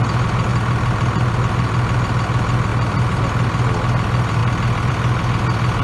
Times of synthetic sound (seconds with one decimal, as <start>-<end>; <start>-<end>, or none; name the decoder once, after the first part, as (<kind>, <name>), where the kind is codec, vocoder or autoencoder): 2.7-3.2 (vocoder, BigVGAN v2)